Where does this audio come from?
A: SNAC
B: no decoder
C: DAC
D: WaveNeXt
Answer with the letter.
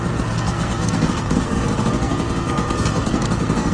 A